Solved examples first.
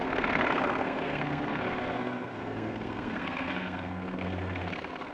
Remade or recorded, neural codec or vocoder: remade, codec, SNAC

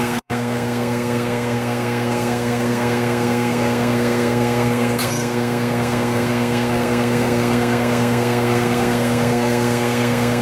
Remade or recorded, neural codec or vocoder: remade, codec, SNAC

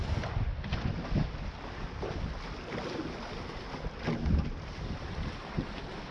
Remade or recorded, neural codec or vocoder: recorded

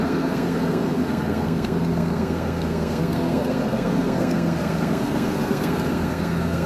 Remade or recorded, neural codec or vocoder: remade, codec, SNAC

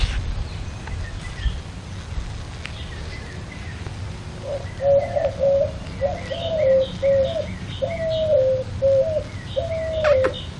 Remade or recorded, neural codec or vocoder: recorded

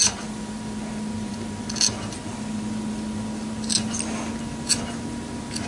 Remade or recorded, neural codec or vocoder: recorded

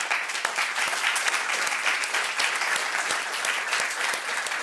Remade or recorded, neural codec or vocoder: recorded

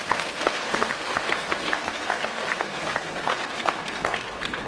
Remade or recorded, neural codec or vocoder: remade, codec, SNAC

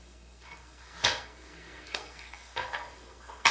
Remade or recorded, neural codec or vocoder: remade, codec, SNAC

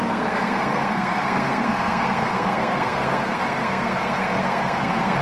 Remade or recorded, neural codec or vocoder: remade, codec, SNAC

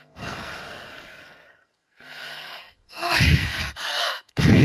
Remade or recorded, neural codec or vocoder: remade, codec, SNAC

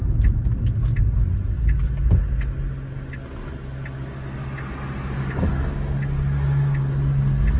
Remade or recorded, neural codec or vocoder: recorded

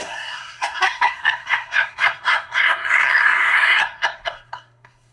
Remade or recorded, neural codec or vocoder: remade, codec, SNAC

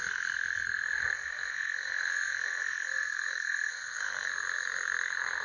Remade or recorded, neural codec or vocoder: remade, codec, SNAC